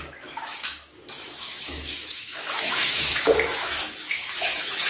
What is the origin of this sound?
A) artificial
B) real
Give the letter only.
A